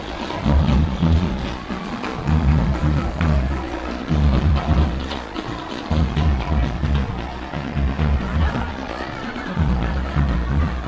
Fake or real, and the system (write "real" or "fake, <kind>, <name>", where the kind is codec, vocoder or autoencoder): fake, vocoder, Vocos